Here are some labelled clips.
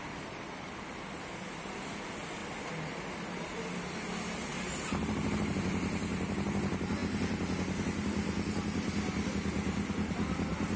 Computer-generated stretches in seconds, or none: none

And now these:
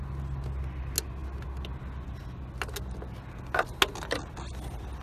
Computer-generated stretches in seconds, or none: none

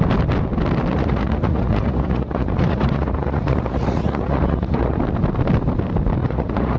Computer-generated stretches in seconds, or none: 0.9-5.0 (vocoder, Vocos); 6.2-6.8

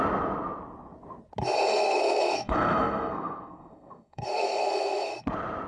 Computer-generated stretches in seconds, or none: 1.7-5.1 (codec, SNAC)